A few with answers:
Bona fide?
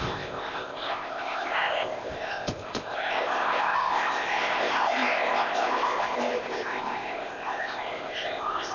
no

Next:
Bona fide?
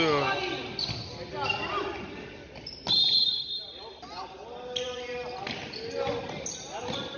yes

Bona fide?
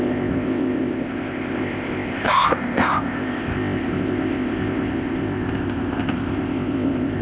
no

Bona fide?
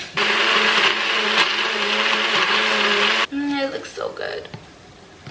yes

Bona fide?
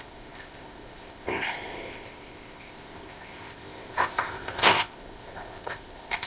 no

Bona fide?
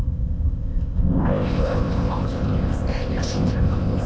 no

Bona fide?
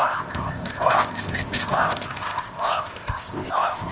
no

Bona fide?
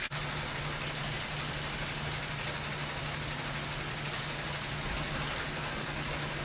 yes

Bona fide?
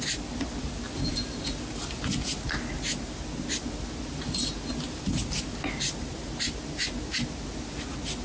yes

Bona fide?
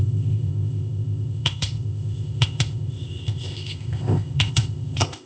no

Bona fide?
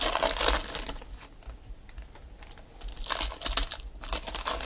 yes